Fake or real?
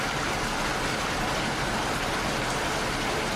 real